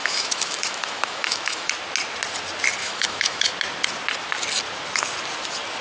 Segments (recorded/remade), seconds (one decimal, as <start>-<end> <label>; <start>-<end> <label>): 0.0-1.7 remade; 1.7-2.8 recorded; 2.8-3.5 remade; 3.5-5.8 recorded